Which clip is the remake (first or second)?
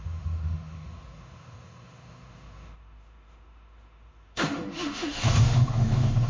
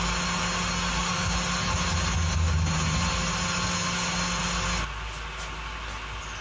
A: first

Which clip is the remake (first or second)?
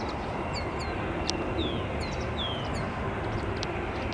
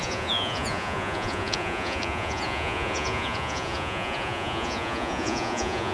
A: second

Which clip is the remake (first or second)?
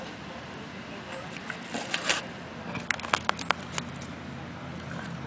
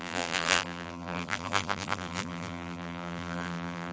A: second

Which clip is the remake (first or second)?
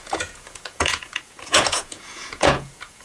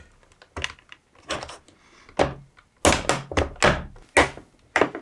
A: first